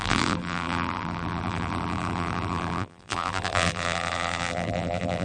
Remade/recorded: remade